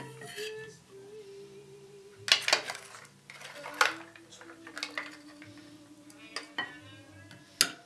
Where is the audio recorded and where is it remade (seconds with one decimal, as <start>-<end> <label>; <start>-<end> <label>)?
0.0-7.9 recorded